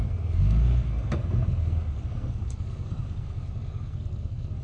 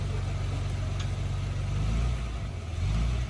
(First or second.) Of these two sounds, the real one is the second